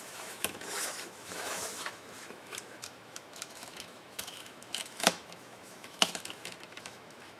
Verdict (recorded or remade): remade